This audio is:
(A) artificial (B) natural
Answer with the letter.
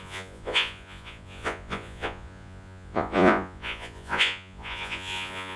A